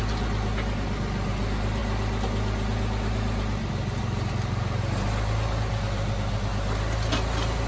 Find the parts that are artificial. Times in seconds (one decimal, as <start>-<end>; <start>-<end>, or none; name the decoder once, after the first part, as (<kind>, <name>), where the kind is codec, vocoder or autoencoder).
none